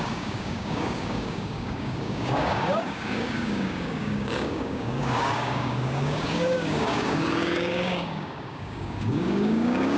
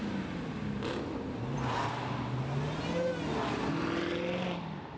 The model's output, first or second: first